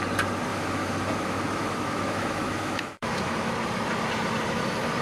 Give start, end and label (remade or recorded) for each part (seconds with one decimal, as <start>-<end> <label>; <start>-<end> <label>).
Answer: 0.0-0.5 recorded; 0.5-3.5 remade; 3.5-5.0 recorded

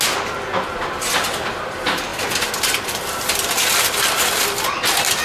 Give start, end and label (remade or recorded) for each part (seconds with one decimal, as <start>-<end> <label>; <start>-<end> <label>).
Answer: 0.0-5.2 recorded

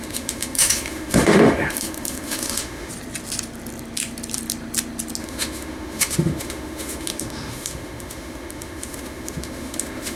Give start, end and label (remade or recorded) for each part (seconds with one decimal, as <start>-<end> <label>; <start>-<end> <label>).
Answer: 0.0-2.9 remade; 2.9-5.2 recorded; 5.2-10.2 remade

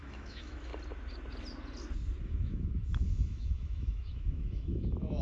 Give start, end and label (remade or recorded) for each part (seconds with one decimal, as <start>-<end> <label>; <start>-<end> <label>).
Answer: 0.0-0.7 remade; 0.7-2.2 recorded; 2.2-5.2 remade

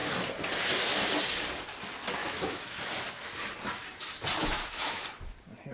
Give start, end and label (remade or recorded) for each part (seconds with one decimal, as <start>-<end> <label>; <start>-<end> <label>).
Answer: 0.0-2.2 recorded; 2.2-2.8 remade; 2.8-4.4 recorded; 4.4-5.0 remade; 5.0-5.7 recorded